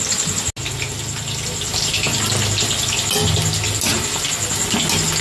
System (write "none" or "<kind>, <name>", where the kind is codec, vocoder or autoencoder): none